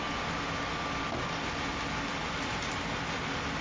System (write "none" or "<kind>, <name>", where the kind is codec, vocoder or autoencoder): none